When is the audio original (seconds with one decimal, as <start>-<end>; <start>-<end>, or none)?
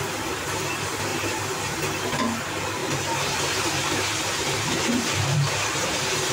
0.0-1.1; 1.7-2.8